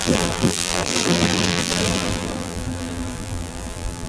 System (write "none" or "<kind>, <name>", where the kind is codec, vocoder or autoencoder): vocoder, BigVGAN v2